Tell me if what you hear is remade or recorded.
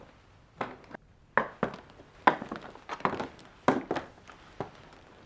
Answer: recorded